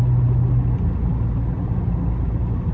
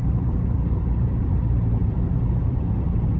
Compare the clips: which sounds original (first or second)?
first